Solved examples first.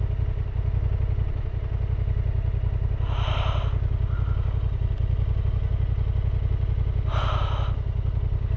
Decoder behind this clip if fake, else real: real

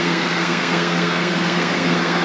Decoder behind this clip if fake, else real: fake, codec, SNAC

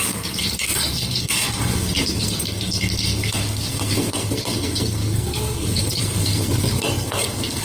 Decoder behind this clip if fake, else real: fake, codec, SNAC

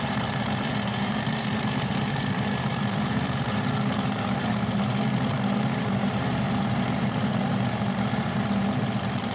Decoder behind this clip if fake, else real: fake, vocoder, BigVGAN v2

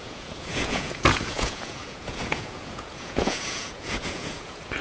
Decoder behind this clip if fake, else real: fake, vocoder, Vocos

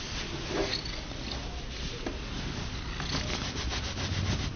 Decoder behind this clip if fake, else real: real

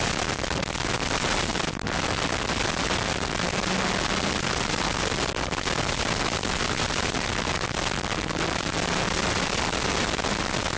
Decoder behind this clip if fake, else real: real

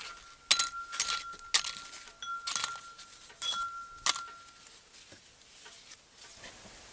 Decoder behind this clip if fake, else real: real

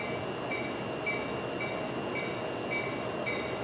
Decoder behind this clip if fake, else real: real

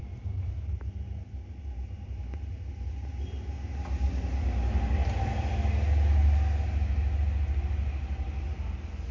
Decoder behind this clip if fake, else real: real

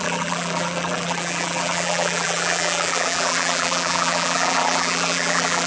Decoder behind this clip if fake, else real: fake, vocoder, BigVGAN v2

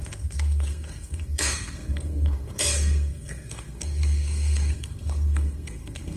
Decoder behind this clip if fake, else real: fake, codec, SNAC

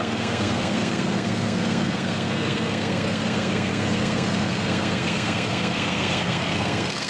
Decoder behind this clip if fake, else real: fake, codec, SNAC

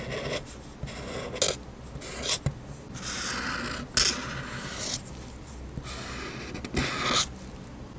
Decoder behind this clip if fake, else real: real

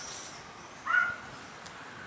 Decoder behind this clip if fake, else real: real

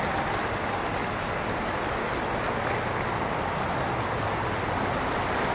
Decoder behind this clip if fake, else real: real